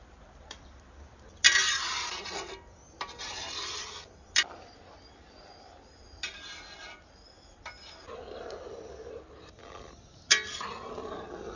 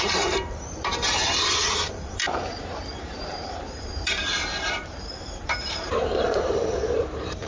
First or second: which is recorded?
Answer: first